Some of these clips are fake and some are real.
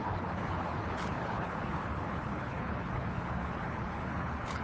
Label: fake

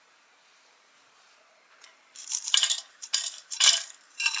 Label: fake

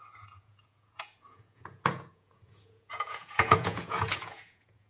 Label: fake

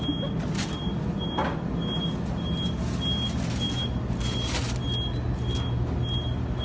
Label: real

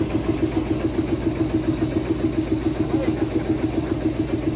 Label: real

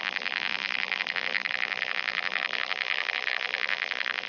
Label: fake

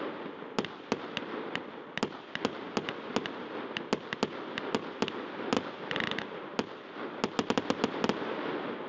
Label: real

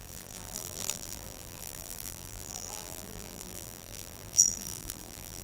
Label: fake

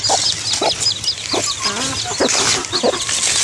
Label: real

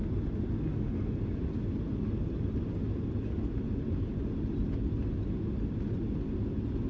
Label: real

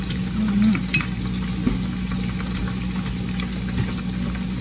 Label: real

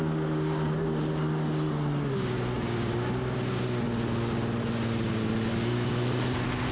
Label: real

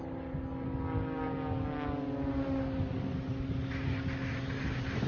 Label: real